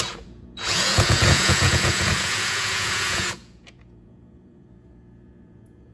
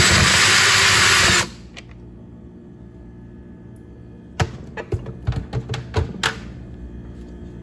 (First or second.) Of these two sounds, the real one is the second